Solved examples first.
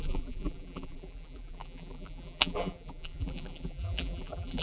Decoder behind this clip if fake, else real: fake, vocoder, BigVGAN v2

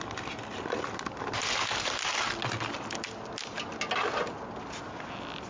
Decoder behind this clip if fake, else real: real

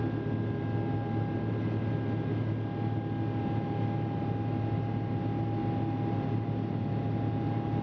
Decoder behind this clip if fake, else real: real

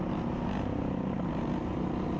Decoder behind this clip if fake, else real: real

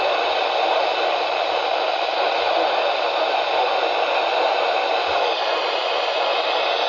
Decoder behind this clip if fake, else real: real